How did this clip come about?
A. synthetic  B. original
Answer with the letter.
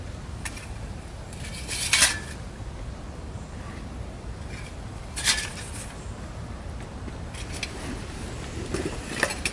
B